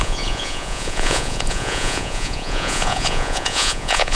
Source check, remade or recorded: remade